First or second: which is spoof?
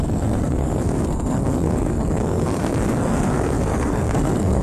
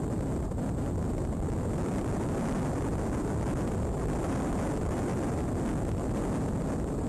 first